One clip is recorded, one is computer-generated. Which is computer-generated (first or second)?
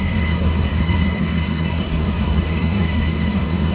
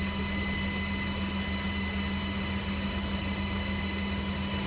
first